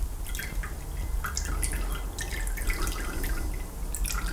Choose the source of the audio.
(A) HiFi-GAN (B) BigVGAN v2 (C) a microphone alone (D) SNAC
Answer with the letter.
C